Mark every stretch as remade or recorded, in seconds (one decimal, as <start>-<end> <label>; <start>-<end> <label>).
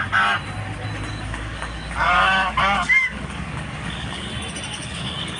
0.0-1.1 recorded; 1.1-4.3 remade; 4.3-4.7 recorded; 4.7-5.4 remade